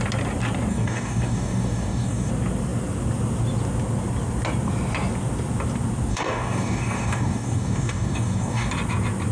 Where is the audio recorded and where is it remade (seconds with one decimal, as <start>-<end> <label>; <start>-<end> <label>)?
0.0-0.7 recorded; 0.7-2.3 remade; 2.3-6.1 recorded; 6.1-8.7 remade; 8.7-9.3 recorded